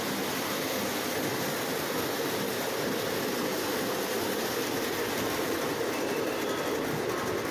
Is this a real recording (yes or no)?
yes